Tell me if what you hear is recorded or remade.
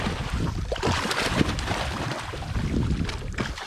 remade